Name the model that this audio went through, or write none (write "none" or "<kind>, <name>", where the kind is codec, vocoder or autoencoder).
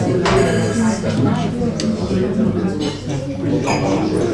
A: none